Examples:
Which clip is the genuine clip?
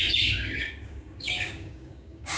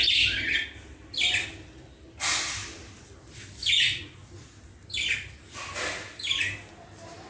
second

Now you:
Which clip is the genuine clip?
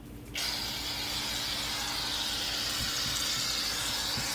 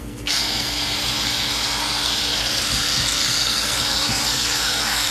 first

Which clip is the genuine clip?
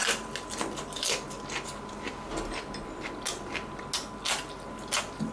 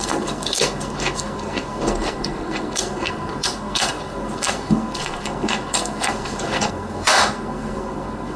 first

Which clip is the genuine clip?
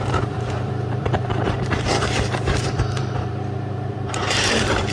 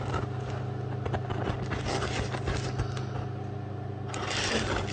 second